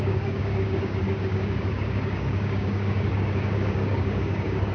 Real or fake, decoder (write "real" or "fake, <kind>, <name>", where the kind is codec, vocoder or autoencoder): fake, codec, DAC